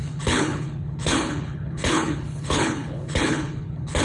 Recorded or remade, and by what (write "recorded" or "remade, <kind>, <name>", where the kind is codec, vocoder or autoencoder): remade, codec, HILCodec